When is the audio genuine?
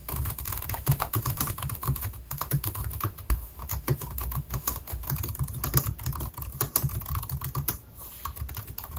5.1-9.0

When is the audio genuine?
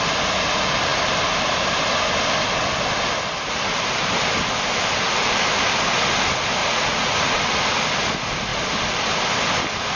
0.0-6.6; 7.2-10.0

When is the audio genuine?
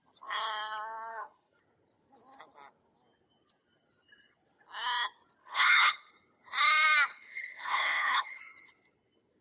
0.0-1.1; 1.6-5.4; 6.1-7.1; 8.4-9.4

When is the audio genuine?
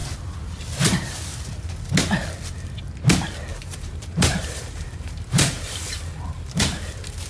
0.0-3.5; 6.6-7.3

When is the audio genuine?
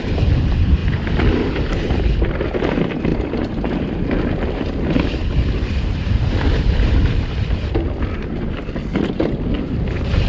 0.0-3.1; 7.5-10.3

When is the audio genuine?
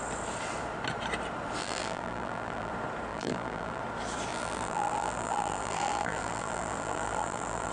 0.0-1.6; 2.7-3.1; 3.8-4.3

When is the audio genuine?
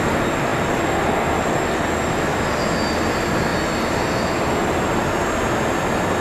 0.0-6.2